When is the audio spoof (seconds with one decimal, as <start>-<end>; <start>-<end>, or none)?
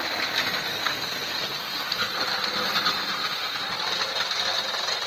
0.7-2.1